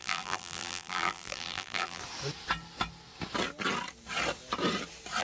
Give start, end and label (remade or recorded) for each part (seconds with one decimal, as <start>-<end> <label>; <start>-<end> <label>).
0.0-2.0 remade; 2.0-5.2 recorded